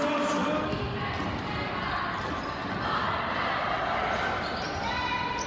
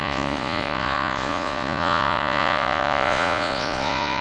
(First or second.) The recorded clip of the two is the first